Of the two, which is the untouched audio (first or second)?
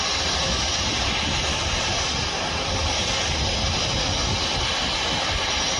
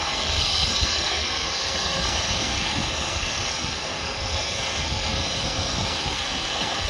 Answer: first